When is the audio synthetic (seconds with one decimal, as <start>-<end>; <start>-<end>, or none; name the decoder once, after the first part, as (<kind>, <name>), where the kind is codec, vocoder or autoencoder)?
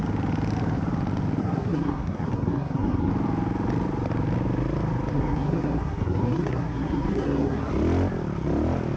1.4-3.1 (codec, SNAC); 5.1-7.7